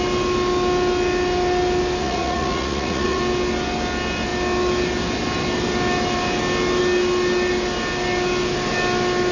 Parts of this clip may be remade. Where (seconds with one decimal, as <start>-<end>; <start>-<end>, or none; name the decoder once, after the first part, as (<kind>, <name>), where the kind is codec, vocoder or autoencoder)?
2.0-3.2 (vocoder, Vocos)